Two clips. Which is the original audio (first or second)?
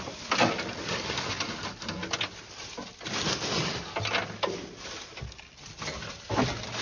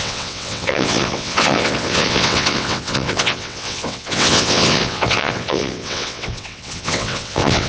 first